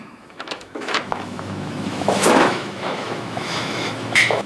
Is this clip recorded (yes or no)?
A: no